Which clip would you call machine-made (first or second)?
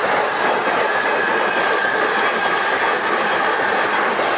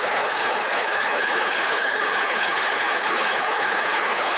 second